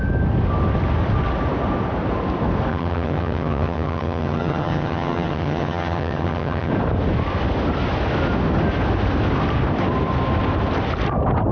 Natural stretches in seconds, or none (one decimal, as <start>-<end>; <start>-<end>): 0.0-2.7; 6.7-11.5